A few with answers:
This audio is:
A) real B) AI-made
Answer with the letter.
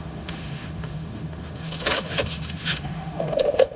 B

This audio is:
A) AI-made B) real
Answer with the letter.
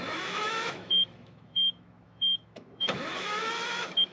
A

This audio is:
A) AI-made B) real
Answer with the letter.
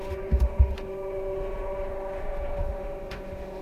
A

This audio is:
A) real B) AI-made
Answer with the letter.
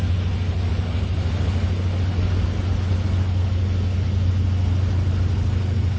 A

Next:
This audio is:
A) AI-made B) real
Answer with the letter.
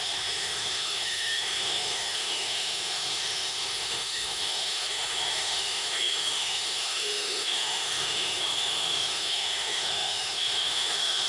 A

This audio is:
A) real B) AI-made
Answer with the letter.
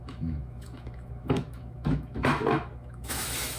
B